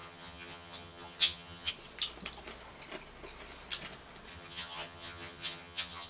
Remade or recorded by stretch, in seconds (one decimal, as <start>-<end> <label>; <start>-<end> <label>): 0.0-1.7 remade; 1.7-4.3 recorded; 4.3-6.1 remade

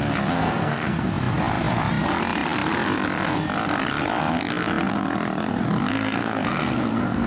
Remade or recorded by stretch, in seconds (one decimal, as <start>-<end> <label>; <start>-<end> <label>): 0.0-0.4 recorded; 0.4-1.1 remade; 1.1-5.9 recorded; 5.9-7.3 remade